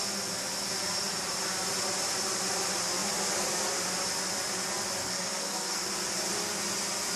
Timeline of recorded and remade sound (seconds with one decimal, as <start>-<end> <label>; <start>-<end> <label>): 0.0-5.0 recorded; 5.0-5.9 remade; 5.9-7.2 recorded